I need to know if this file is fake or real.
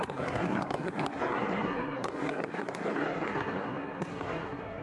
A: fake